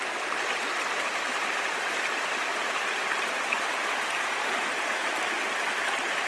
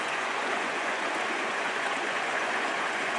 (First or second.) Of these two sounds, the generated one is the second